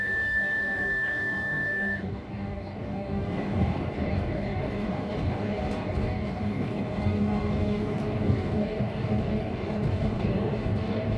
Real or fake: fake